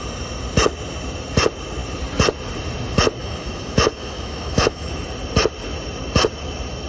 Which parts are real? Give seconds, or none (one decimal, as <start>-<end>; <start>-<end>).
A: 0.0-3.2; 4.9-6.9